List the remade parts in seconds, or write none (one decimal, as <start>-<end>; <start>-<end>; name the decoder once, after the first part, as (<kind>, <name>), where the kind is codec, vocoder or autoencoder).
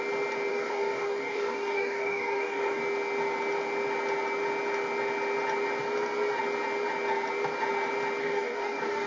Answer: 0.5-2.8 (codec, DAC); 8.2-9.1